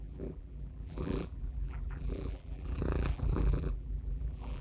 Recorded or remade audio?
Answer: remade